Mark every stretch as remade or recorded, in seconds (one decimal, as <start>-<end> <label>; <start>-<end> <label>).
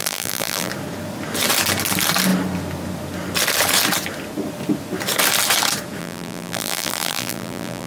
0.0-0.7 remade; 0.7-6.0 recorded; 6.0-7.9 remade